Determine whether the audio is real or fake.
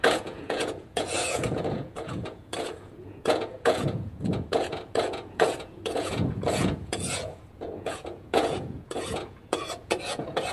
fake